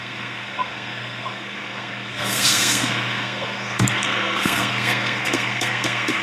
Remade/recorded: remade